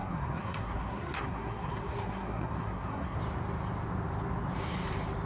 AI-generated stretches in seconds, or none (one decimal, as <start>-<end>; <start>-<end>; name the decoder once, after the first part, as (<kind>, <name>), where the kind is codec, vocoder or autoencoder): 0.0-3.2 (codec, SNAC)